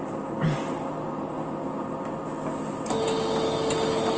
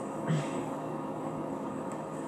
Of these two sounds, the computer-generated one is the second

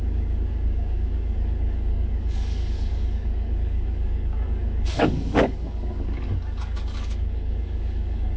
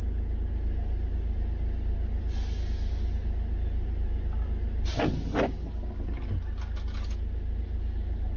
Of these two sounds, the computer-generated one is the first